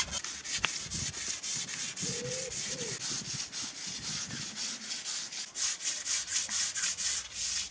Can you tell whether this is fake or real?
real